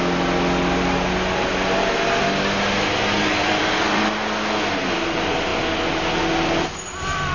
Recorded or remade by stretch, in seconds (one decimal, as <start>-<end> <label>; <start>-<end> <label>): 0.0-3.4 recorded; 3.4-4.0 remade; 4.0-7.3 recorded